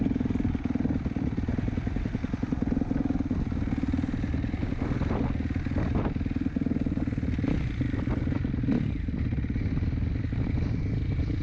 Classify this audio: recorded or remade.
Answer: recorded